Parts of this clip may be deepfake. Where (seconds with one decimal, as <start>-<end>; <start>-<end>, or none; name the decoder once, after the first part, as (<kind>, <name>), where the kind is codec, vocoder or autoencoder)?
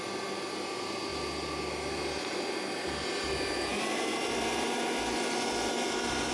3.7-4.8 (vocoder, BigVGAN v2)